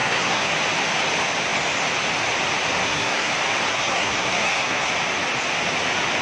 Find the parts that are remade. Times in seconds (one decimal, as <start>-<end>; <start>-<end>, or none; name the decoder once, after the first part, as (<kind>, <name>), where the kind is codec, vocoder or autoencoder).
0.0-0.5 (codec, SNAC); 2.8-3.3; 3.7-4.9